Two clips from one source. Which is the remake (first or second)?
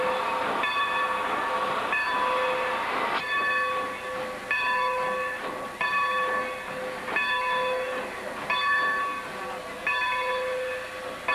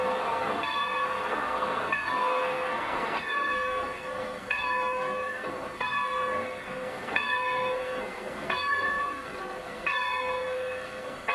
second